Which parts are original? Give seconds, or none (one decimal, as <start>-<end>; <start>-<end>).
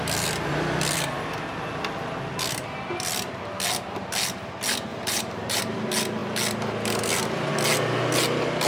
0.0-4.9; 5.6-8.7